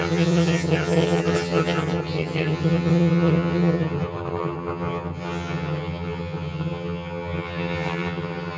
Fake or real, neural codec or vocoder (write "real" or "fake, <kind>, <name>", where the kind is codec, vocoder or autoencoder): fake, vocoder, HiFi-GAN